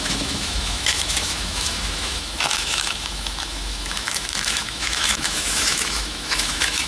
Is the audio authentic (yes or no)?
no